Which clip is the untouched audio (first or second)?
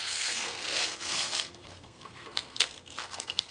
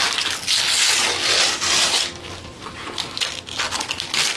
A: second